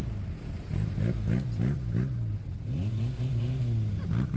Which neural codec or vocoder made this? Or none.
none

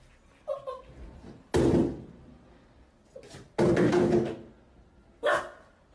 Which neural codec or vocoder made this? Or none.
none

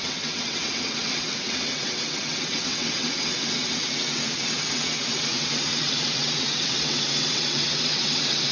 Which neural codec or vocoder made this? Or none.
vocoder, WaveNeXt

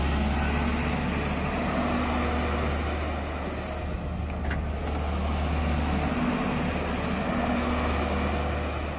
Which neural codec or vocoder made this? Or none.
none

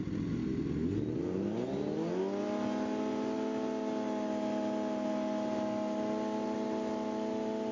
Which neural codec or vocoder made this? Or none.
none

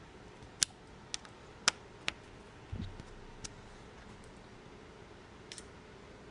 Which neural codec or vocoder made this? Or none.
none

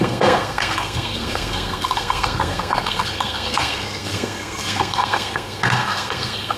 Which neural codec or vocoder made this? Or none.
codec, SNAC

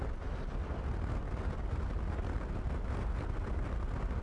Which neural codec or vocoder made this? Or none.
none